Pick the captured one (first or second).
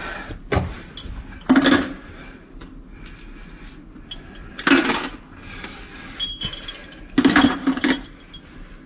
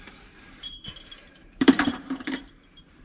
first